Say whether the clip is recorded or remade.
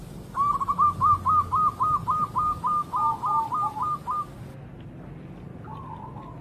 recorded